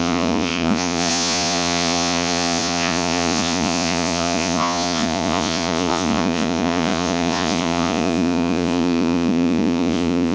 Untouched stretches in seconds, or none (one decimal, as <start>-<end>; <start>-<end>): none